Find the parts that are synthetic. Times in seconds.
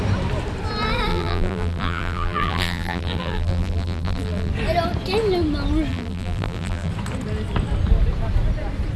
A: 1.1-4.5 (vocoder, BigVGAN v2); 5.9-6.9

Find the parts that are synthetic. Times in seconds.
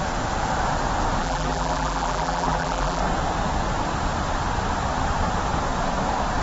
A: 1.2-3.0 (vocoder, BigVGAN v2)